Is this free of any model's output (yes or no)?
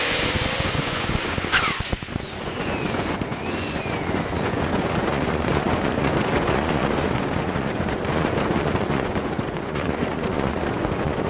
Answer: no